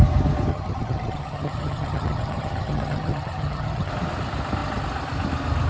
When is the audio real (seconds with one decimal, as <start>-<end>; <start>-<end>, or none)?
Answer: 0.0-0.5; 3.9-5.7